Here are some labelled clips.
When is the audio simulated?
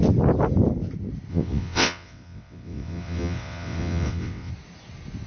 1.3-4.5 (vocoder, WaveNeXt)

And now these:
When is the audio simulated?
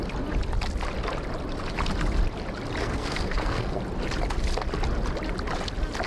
2.8-3.8 (codec, SNAC)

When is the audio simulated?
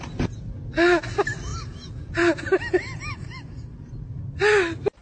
none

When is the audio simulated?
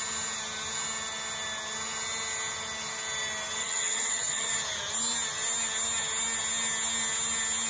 3.6-4.5 (vocoder, HiFi-GAN)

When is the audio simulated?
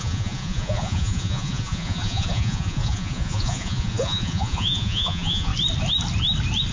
0.0-5.5 (vocoder, Vocos)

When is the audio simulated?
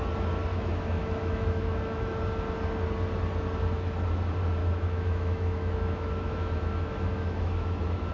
0.5-2.2 (autoencoder, DAC-VAE); 4.6-8.1